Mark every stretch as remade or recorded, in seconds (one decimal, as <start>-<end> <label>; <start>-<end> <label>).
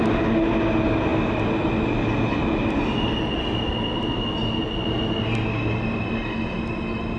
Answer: 0.0-7.2 recorded